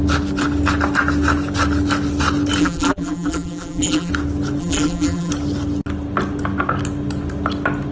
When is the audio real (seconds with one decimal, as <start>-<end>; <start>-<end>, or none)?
0.0-2.6; 4.1-4.6; 5.3-7.9